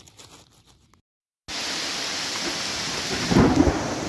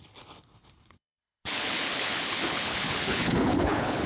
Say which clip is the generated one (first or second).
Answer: second